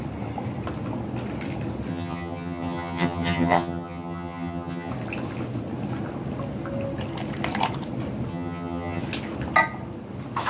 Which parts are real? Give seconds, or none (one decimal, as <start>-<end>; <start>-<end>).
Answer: 0.0-1.9; 4.9-8.3; 9.0-10.5